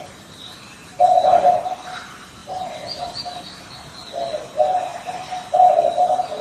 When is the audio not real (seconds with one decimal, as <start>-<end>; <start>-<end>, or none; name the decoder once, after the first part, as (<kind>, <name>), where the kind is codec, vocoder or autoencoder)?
none